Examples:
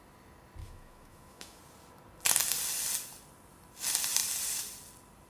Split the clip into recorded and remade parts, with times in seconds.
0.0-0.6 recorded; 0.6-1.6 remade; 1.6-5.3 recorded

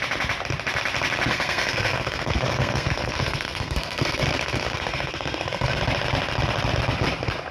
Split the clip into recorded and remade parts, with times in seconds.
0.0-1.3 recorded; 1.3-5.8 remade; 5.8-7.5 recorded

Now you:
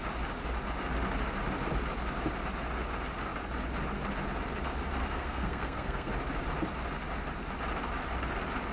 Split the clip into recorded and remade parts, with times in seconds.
0.0-5.0 recorded; 5.0-6.1 remade; 6.1-8.7 recorded

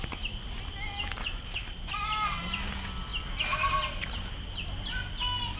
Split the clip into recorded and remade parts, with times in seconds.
0.0-5.6 recorded

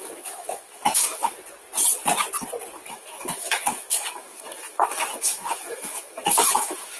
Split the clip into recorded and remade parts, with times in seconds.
0.0-1.3 remade; 1.3-2.9 recorded; 2.9-7.0 remade